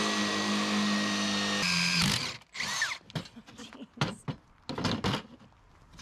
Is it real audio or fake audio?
real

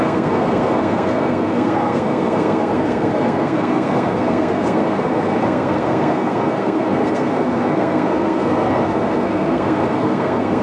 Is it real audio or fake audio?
fake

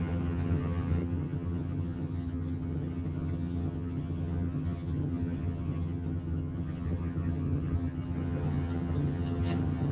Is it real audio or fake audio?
fake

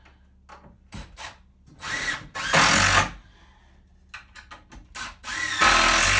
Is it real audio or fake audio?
real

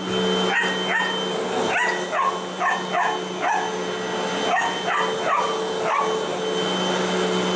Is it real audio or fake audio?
real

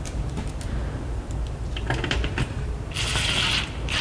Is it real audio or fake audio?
fake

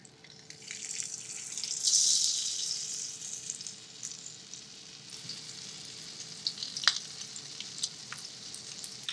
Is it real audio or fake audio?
real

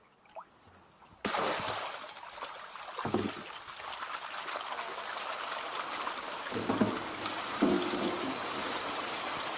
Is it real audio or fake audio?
real